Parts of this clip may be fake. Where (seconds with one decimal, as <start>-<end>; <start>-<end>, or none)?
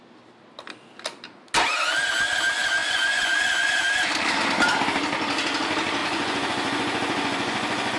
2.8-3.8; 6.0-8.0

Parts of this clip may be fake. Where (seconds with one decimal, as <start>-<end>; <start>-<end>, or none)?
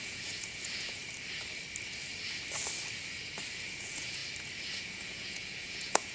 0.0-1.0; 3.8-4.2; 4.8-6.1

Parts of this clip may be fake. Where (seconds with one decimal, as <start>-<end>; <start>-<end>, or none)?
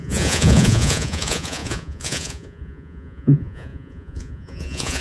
0.0-5.0